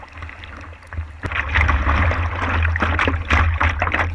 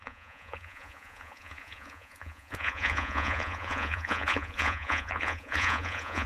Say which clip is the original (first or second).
first